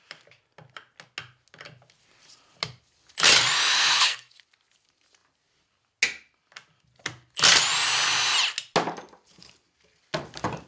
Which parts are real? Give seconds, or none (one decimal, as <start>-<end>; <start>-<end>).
0.0-3.7; 4.4-10.7